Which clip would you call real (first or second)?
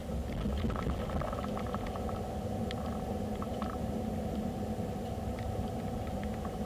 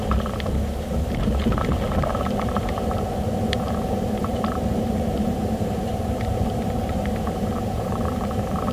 first